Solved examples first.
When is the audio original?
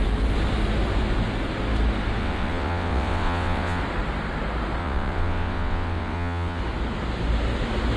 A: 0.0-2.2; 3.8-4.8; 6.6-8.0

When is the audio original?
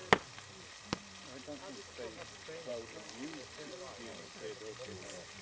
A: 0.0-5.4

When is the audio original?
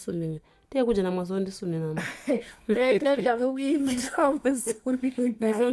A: 0.5-2.3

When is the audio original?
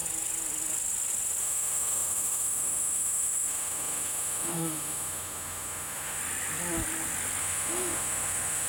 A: 0.0-1.4; 6.2-7.4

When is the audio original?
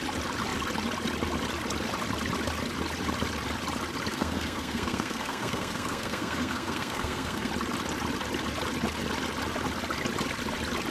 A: 0.0-4.1; 7.5-10.9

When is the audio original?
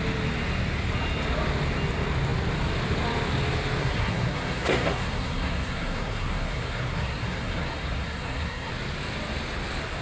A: 0.0-3.8; 8.7-10.0